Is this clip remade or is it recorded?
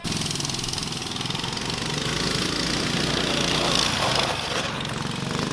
recorded